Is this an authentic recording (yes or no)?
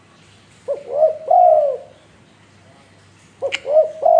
yes